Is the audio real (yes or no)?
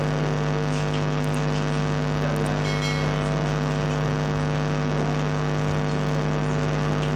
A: yes